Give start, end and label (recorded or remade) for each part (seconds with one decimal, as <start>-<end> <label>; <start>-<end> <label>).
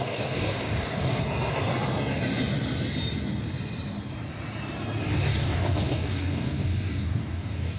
0.0-1.2 remade; 1.2-5.1 recorded; 5.1-7.8 remade